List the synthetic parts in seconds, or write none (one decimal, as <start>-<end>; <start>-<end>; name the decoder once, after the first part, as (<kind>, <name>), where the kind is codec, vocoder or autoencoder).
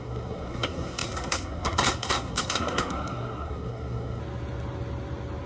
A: 0.0-4.2 (codec, SNAC)